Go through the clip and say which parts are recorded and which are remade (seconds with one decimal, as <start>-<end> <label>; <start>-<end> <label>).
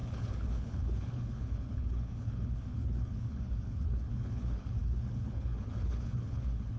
0.0-6.8 remade